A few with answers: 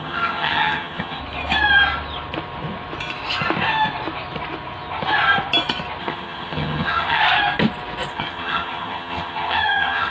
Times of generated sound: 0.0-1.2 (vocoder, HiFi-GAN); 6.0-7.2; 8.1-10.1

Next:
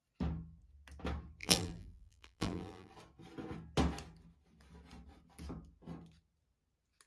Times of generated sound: 1.4-2.9 (vocoder, BigVGAN v2)

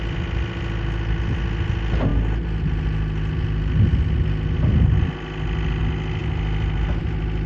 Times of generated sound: none

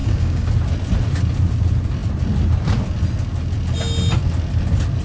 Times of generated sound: 0.0-0.5 (codec, DAC)

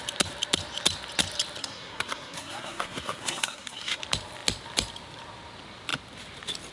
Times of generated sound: 1.6-4.0 (codec, SNAC)

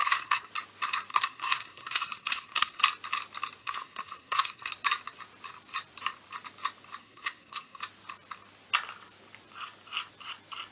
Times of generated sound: 0.0-0.5 (codec, SNAC); 1.1-2.8; 3.6-4.7; 7.0-7.8

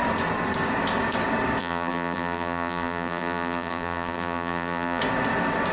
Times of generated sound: 1.6-5.0 (vocoder, BigVGAN v2)